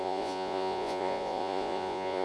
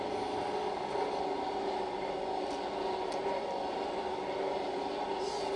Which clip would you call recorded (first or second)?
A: second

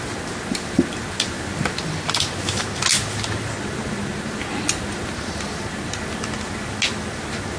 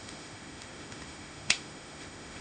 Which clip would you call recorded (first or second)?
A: first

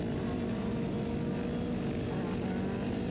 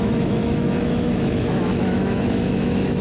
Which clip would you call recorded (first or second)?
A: first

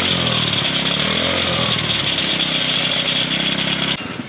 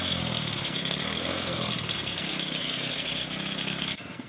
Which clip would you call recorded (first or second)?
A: first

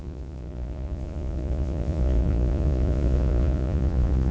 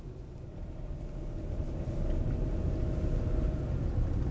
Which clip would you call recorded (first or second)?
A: second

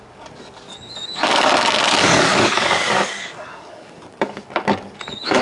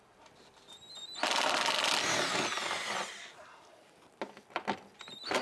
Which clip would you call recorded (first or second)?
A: second